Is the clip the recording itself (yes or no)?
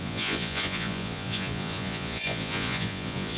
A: no